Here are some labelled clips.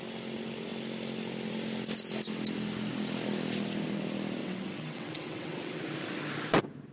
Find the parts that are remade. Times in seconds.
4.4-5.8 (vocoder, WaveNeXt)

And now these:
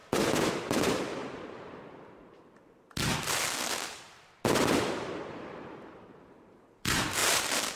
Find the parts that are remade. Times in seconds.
0.5-1.2 (vocoder, BigVGAN v2); 4.9-7.8

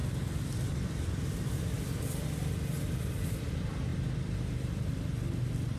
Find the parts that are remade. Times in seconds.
0.0-3.9 (vocoder, BigVGAN v2)